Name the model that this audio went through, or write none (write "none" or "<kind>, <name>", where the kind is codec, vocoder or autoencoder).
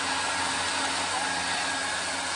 none